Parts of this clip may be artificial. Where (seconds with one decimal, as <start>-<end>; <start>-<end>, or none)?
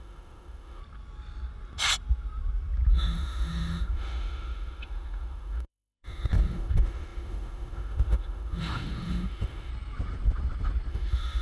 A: 0.0-0.8; 2.9-9.7; 10.9-11.4